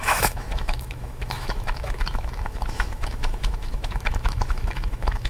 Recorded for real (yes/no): no